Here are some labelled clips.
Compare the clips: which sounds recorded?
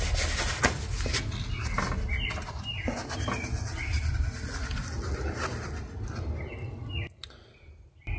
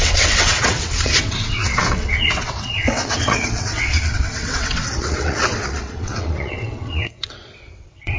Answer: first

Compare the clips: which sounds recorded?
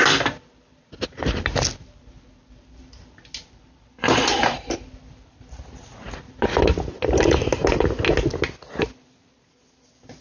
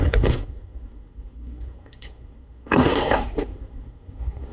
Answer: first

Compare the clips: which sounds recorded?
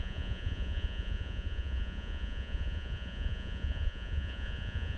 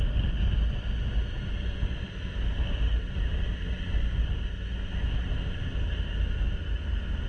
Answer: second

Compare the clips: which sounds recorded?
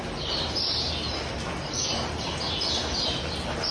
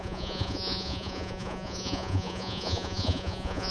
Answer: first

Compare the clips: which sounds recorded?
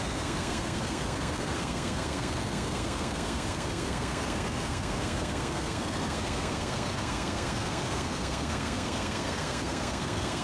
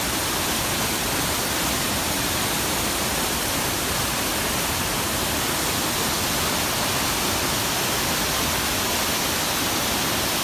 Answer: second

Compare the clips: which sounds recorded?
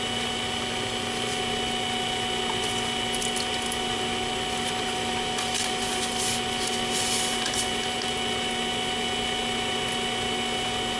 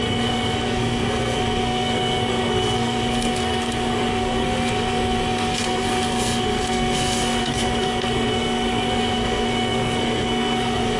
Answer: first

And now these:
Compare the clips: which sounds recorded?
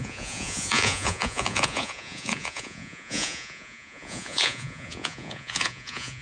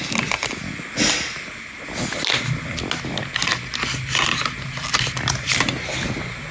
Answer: second